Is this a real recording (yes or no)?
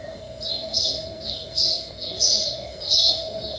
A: no